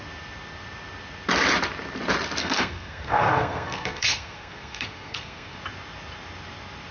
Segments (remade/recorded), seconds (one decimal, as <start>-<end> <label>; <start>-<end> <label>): 0.0-2.4 recorded; 2.4-5.6 remade; 5.6-6.9 recorded